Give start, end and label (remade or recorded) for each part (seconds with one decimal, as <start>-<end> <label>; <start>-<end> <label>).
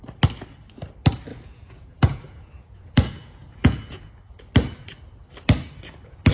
0.0-1.3 recorded; 1.3-4.1 remade; 4.1-6.3 recorded